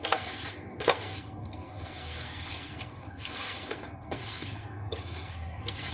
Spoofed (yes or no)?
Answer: yes